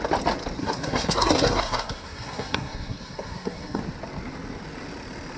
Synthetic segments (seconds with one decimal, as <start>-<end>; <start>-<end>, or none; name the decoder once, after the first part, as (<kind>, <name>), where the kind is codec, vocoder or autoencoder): 0.6-3.8 (codec, SNAC)